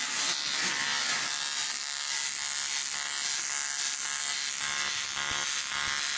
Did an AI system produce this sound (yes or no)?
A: no